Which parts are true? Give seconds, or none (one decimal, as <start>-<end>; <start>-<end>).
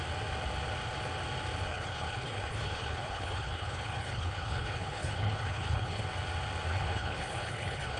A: 0.0-1.7; 6.0-6.7